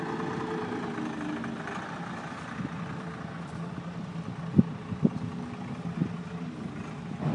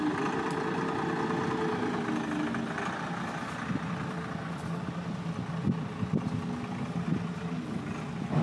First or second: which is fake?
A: first